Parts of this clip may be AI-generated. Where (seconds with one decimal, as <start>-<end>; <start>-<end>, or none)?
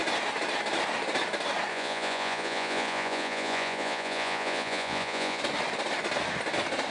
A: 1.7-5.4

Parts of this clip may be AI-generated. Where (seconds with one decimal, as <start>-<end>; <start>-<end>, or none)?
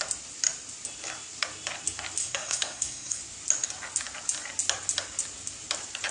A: 2.2-3.2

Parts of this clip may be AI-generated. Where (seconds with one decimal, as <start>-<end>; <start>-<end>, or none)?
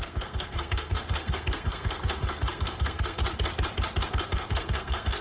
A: 0.0-3.2; 4.1-5.2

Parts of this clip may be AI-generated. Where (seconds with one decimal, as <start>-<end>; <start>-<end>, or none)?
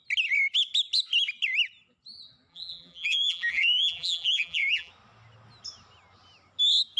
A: 2.5-4.9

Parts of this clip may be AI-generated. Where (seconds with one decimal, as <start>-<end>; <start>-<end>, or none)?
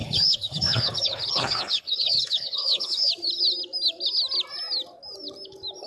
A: 0.0-3.1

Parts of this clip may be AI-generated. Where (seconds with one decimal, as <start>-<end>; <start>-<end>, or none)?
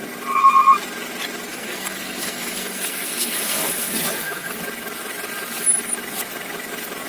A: 1.5-4.6